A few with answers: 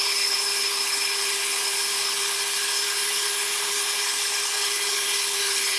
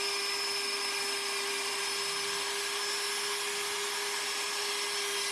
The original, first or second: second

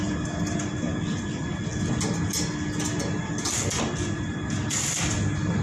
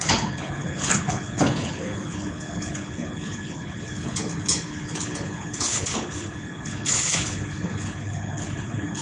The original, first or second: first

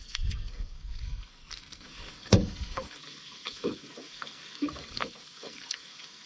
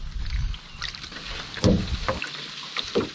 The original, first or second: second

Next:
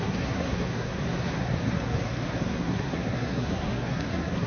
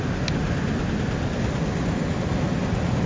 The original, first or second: second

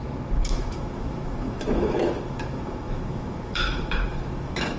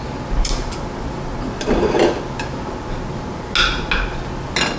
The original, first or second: second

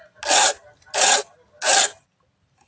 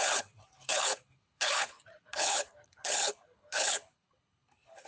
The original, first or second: first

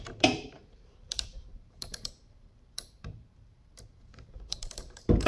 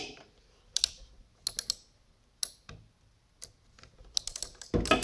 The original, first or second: second